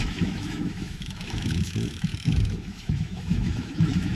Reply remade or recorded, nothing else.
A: remade